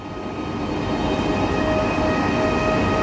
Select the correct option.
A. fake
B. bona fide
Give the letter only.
B